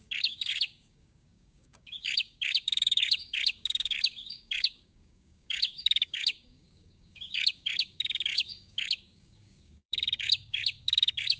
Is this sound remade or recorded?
remade